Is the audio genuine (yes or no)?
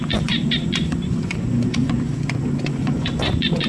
no